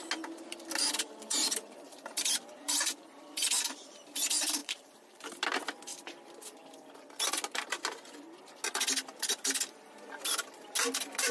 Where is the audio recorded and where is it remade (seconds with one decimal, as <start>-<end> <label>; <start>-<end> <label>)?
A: 0.0-0.8 recorded; 0.8-4.1 remade; 4.1-4.6 recorded; 4.6-5.3 remade; 5.3-11.3 recorded